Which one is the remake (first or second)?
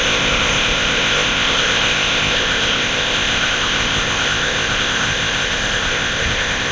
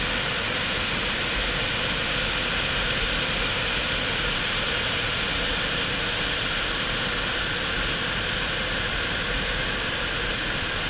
first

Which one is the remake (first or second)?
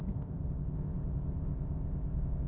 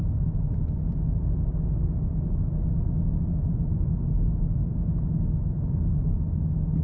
first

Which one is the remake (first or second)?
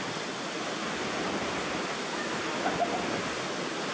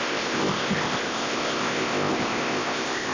second